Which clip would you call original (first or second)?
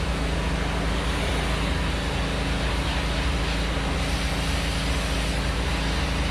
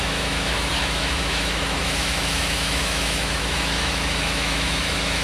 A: first